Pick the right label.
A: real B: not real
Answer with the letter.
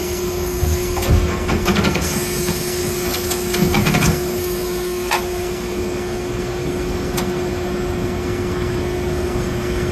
B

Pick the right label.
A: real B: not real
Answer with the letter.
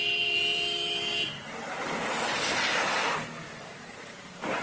B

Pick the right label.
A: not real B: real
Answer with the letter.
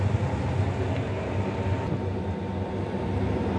B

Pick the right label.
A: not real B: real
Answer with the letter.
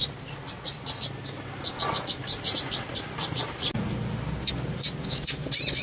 B